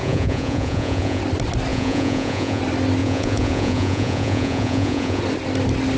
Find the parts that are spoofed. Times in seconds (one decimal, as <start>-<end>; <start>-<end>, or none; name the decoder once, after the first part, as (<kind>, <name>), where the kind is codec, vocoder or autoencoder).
0.0-1.2 (vocoder, Vocos); 1.7-2.6; 3.0-5.2